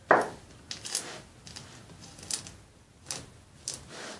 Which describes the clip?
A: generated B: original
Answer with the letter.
B